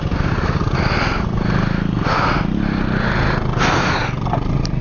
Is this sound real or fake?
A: real